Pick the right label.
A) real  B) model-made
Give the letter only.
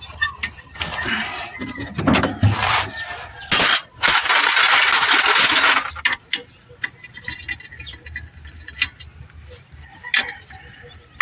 A